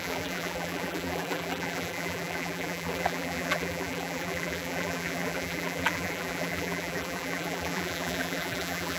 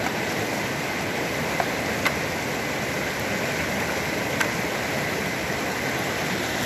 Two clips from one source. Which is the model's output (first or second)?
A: first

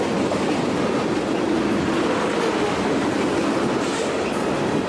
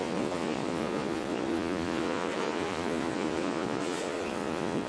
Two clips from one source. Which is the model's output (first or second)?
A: second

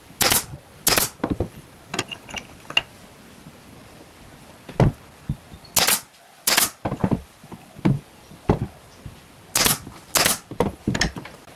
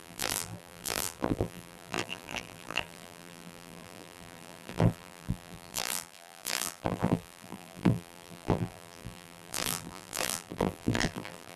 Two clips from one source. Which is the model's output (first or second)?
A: second